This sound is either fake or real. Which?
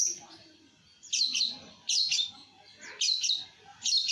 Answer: real